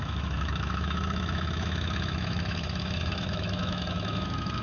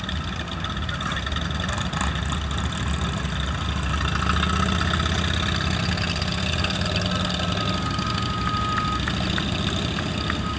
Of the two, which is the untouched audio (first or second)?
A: second